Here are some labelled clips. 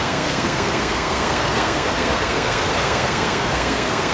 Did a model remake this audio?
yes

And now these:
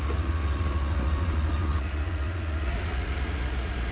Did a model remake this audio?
yes